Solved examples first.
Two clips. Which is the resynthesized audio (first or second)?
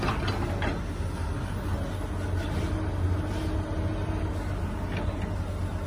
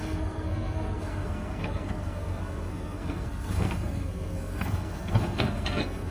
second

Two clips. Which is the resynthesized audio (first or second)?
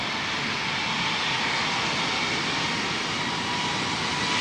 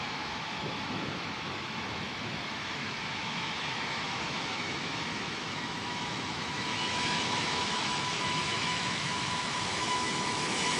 second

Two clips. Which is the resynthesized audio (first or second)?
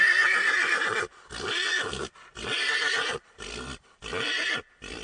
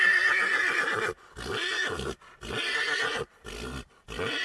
first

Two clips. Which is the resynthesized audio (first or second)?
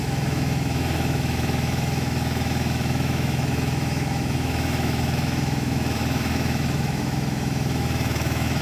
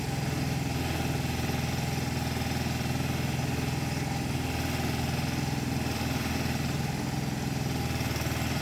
first